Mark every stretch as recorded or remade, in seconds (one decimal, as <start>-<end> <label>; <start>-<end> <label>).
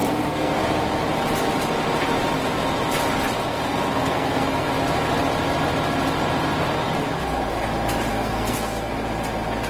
0.0-0.6 remade; 0.6-3.5 recorded; 3.5-4.7 remade; 4.7-8.1 recorded; 8.1-8.9 remade; 8.9-9.7 recorded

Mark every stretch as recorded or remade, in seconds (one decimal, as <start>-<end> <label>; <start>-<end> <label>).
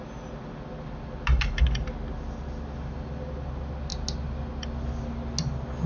0.0-5.9 recorded